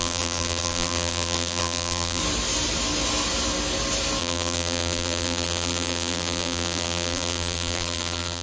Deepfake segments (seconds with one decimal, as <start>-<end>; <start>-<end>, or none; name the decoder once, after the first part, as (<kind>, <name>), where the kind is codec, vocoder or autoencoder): 0.0-2.2 (vocoder, BigVGAN v2); 4.2-8.4